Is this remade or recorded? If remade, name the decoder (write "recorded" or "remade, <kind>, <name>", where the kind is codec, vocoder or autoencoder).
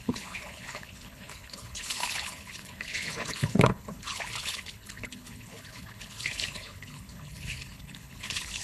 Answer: remade, codec, HILCodec